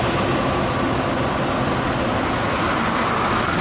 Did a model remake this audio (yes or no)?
no